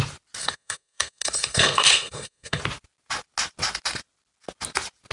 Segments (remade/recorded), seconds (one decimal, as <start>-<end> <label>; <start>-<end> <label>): 0.0-0.4 recorded; 0.4-2.6 remade; 2.6-5.1 recorded